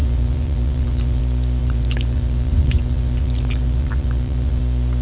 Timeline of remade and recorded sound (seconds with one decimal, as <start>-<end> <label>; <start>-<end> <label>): 0.0-1.2 remade; 1.2-1.6 recorded; 1.6-4.6 remade; 4.6-5.0 recorded